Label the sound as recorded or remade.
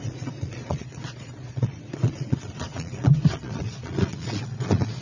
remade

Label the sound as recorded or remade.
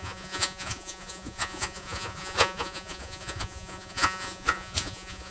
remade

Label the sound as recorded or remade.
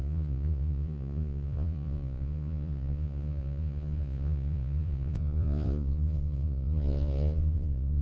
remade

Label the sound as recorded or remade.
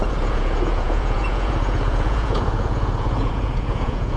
remade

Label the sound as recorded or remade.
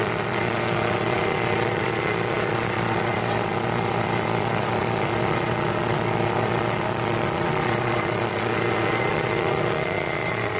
remade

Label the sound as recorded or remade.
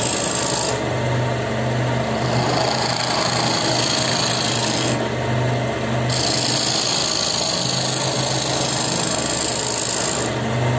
recorded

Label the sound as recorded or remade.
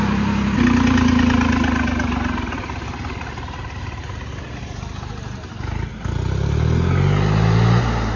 recorded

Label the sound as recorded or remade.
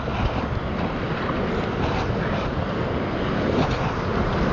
recorded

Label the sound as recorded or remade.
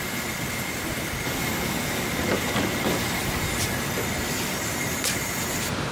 recorded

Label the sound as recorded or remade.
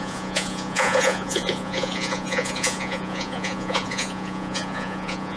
remade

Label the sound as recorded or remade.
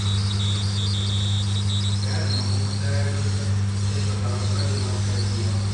recorded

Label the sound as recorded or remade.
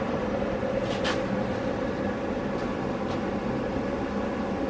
recorded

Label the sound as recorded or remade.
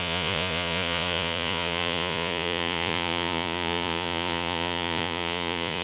remade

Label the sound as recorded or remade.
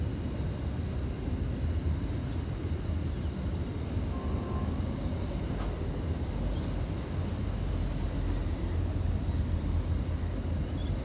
recorded